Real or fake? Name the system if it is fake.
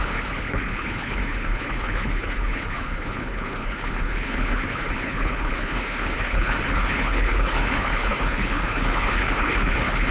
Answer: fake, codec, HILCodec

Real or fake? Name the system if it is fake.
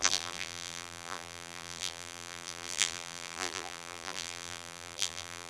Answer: fake, vocoder, BigVGAN v2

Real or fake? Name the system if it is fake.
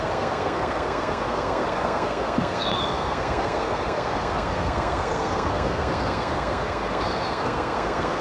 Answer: fake, codec, SNAC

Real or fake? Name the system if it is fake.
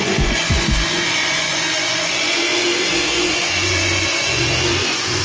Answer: fake, vocoder, Vocos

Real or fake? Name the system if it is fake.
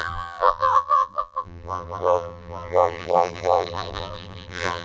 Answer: fake, vocoder, BigVGAN v2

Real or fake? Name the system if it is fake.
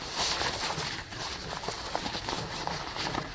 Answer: real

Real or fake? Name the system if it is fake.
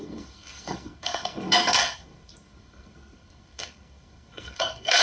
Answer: fake, codec, SNAC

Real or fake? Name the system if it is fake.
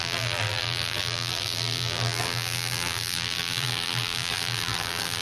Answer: fake, vocoder, BigVGAN v2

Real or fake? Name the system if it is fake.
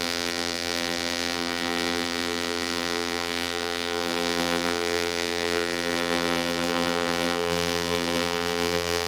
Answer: fake, vocoder, BigVGAN v2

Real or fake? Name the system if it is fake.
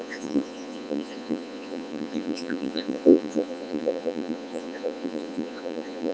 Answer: fake, vocoder, Vocos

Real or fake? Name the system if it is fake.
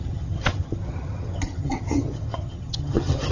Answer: fake, vocoder, HiFi-GAN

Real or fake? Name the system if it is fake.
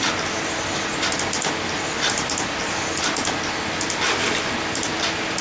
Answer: real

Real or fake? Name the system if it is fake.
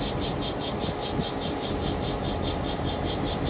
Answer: real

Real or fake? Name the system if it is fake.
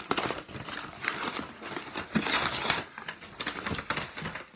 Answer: real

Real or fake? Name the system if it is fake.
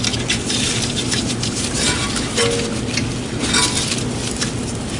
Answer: real